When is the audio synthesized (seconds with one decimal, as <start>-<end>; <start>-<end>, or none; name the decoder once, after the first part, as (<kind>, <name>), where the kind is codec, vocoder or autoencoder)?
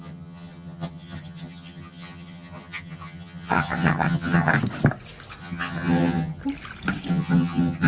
0.0-4.5 (vocoder, HiFi-GAN); 5.4-6.4; 7.1-7.9